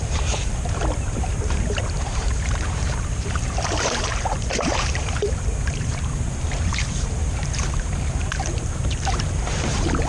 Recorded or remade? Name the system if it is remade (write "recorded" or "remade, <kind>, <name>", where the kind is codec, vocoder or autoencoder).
remade, vocoder, BigVGAN v2